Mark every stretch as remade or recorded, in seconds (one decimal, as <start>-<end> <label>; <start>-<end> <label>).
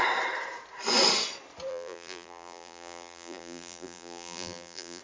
0.0-1.7 recorded; 1.7-5.0 remade